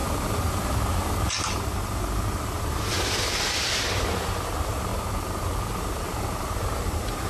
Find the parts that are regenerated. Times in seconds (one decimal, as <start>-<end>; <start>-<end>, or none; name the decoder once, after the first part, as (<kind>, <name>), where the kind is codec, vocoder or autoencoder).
1.3-4.9 (vocoder, BigVGAN v2); 5.8-7.3